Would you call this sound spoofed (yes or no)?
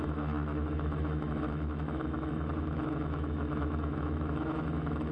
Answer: yes